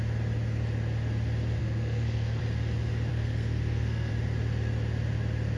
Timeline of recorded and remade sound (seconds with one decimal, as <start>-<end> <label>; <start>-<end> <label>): 0.0-1.6 recorded; 1.6-2.4 remade; 2.4-3.1 recorded; 3.1-4.1 remade; 4.1-5.6 recorded